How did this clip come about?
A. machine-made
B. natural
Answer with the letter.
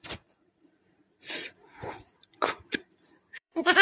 A